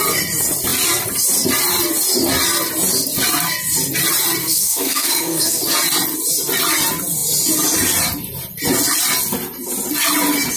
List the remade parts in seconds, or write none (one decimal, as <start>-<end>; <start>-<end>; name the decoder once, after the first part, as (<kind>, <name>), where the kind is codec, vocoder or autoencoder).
4.4-5.6 (codec, SNAC)